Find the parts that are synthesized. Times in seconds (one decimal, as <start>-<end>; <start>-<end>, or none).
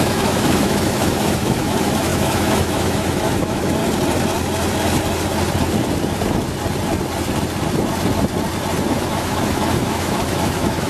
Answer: 0.0-3.8; 8.9-10.9